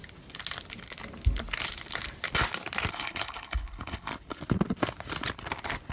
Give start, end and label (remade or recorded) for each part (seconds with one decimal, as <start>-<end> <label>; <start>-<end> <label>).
0.0-2.9 recorded; 2.9-4.1 remade; 4.1-5.9 recorded